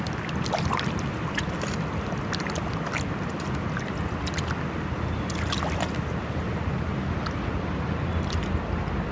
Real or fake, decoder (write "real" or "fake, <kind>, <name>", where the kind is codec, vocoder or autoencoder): real